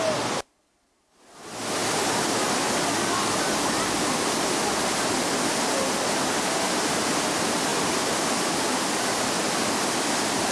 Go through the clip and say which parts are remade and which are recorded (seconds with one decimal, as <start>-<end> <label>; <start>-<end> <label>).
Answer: 0.0-10.5 recorded